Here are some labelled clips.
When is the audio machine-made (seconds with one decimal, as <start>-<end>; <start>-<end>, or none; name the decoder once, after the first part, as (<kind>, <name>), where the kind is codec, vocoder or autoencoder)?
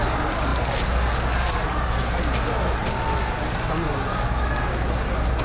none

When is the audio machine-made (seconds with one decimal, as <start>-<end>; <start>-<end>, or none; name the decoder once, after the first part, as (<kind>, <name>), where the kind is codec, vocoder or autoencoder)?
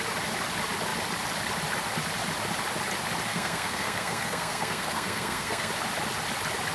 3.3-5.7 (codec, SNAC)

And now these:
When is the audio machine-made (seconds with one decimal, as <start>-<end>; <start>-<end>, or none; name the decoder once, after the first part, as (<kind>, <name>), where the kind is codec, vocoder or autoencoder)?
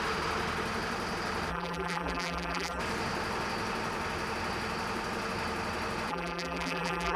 1.5-2.8 (vocoder, BigVGAN v2); 6.1-7.2